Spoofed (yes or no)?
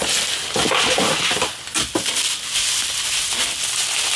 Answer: no